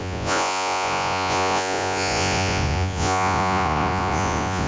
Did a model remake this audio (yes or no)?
yes